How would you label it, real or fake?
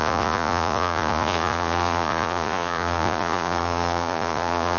fake